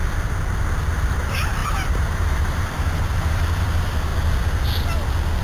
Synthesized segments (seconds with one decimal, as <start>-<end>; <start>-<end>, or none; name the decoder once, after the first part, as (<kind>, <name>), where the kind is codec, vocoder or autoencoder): 0.9-4.1 (vocoder, BigVGAN v2)